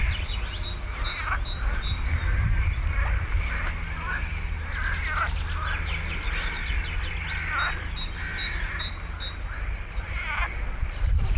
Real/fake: real